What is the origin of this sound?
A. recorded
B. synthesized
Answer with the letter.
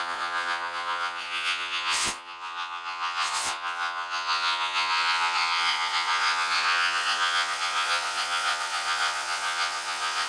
B